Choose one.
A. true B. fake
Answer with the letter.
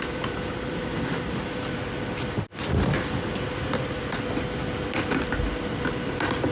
A